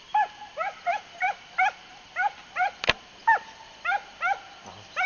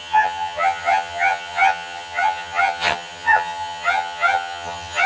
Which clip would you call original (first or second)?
first